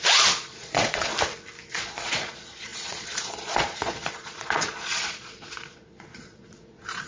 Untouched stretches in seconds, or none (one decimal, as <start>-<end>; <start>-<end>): 1.1-1.7